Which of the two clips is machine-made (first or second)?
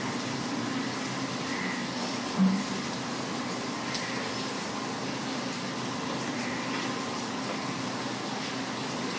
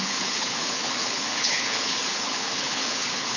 second